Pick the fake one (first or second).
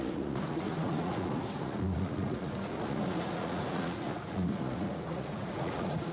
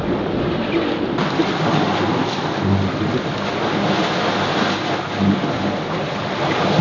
first